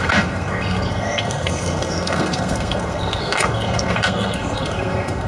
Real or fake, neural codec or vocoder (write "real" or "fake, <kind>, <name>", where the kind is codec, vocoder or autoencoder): fake, codec, SNAC